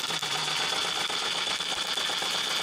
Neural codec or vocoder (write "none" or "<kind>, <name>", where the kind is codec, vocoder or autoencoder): none